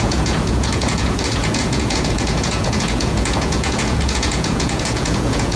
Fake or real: fake